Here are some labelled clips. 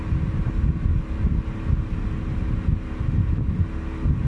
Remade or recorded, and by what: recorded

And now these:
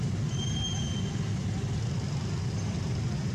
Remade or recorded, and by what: recorded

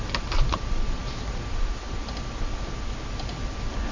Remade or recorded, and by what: recorded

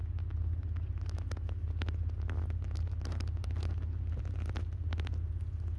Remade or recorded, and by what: recorded